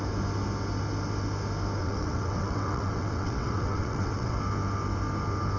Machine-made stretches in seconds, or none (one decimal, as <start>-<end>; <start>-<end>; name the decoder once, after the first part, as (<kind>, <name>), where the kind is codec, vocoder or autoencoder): 1.8-4.4 (vocoder, WaveNeXt)